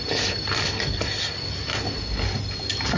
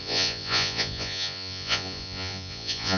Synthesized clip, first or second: second